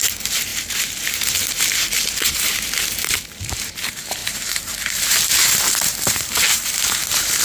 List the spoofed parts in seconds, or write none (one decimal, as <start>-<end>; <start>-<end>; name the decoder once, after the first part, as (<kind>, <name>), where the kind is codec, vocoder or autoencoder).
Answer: 0.0-7.4 (vocoder, BigVGAN v2)